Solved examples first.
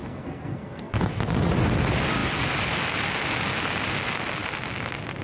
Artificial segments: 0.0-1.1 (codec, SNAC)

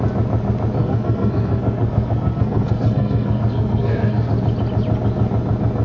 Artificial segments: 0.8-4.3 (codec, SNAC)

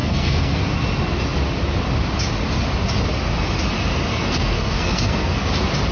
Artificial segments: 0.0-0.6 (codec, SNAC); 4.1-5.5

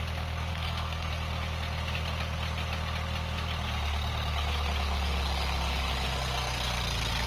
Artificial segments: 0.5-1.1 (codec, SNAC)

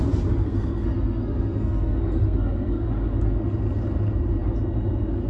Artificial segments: 0.4-2.9 (codec, SNAC)

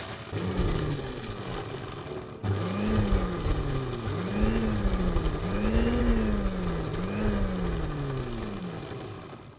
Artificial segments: none

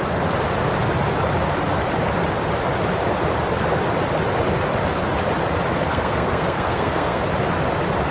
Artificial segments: 5.9-7.2 (codec, SNAC)

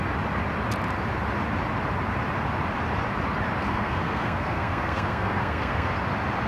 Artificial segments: 3.6-5.9 (codec, SNAC)